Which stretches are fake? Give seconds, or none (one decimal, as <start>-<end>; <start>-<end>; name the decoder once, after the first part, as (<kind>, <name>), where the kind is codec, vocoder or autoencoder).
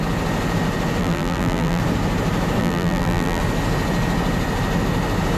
1.0-1.8 (vocoder, BigVGAN v2); 2.6-3.4